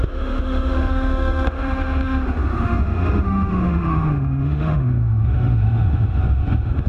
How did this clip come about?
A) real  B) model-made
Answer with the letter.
B